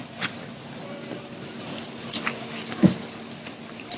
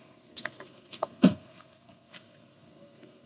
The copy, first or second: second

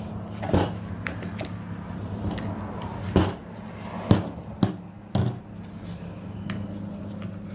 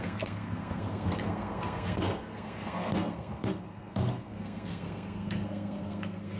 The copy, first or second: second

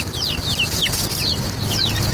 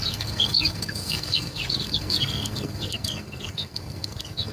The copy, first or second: second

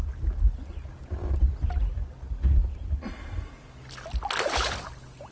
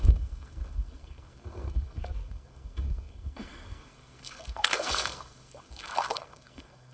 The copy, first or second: second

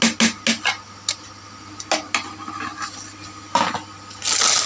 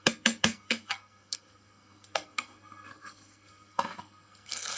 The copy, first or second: second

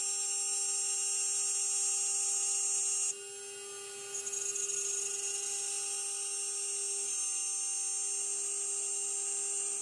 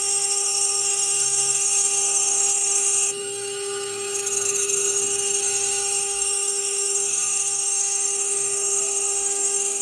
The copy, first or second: second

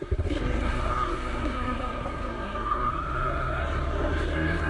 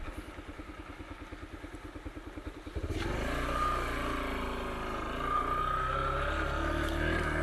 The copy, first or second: first